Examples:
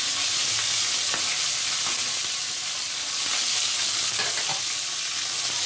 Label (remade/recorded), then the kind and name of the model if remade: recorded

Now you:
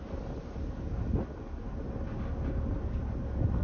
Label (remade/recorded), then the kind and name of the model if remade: recorded